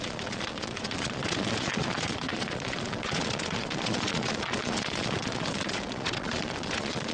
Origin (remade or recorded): remade